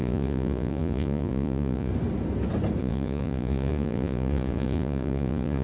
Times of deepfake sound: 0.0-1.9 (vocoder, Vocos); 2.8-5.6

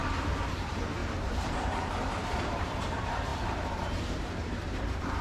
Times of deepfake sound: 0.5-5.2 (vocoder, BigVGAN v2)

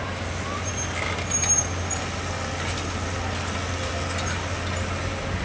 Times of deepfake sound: none